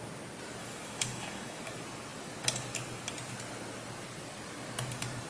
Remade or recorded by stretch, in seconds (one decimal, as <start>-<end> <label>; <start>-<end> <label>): 0.0-0.6 recorded; 0.6-1.6 remade; 1.6-5.3 recorded